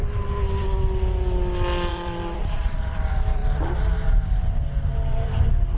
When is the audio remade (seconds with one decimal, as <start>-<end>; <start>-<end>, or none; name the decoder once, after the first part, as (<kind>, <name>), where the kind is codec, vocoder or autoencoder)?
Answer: 1.9-5.8 (vocoder, BigVGAN v2)